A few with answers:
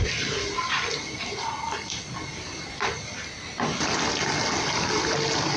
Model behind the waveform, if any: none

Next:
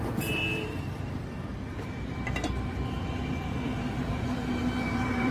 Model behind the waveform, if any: vocoder, BigVGAN v2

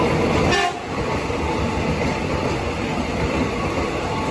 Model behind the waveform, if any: none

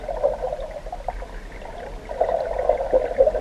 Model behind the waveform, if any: none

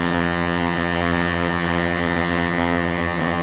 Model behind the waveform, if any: vocoder, HiFi-GAN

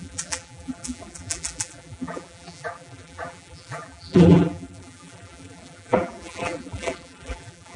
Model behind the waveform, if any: vocoder, BigVGAN v2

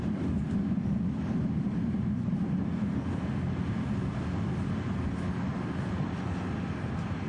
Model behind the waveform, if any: none